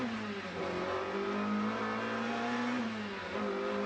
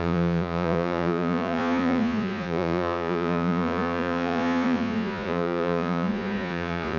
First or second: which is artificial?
second